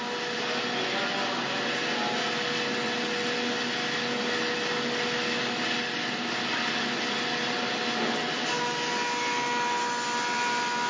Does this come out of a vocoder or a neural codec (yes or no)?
no